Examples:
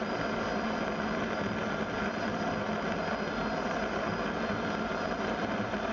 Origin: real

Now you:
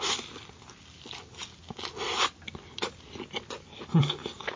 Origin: real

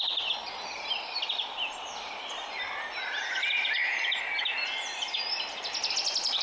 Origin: real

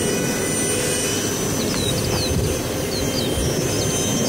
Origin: real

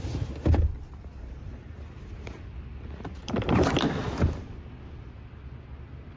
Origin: real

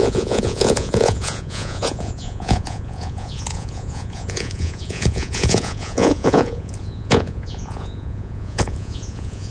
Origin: fake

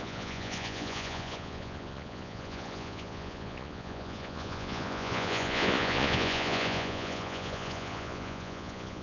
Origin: fake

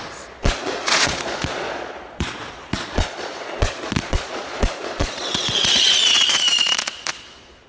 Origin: fake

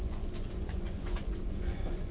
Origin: fake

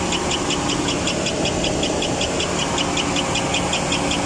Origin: real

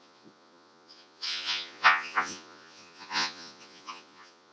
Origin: fake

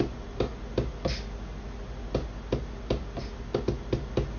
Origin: real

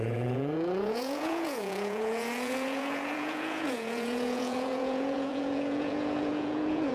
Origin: fake